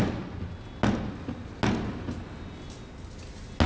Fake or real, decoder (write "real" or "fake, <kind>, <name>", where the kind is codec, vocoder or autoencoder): real